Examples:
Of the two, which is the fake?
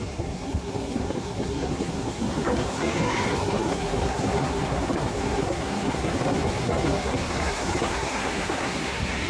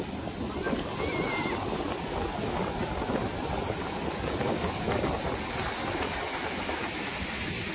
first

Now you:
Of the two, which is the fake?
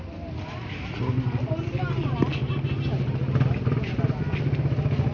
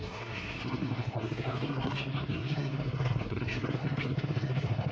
second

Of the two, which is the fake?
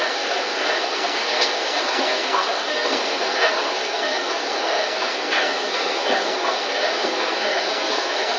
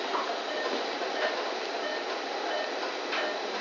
first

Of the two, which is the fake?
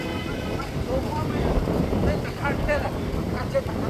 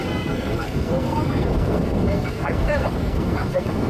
second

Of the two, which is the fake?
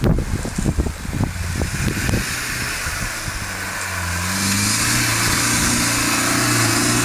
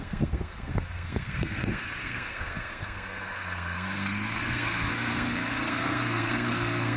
second